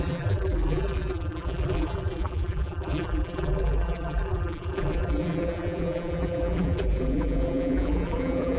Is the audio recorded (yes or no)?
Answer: no